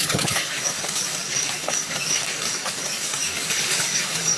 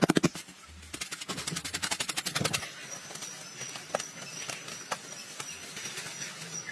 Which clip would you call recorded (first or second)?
second